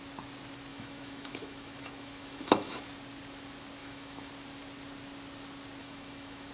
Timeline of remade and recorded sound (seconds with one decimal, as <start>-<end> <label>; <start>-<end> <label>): 0.0-0.7 recorded; 0.7-2.9 remade; 2.9-3.8 recorded; 3.8-4.3 remade; 4.3-5.8 recorded; 5.8-6.5 remade